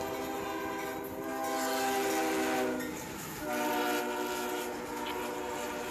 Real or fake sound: real